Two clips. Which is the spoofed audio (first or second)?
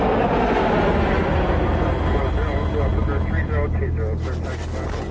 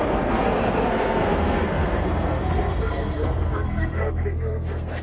second